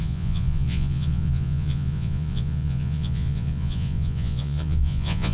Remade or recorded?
remade